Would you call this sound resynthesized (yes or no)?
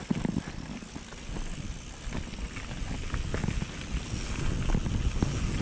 no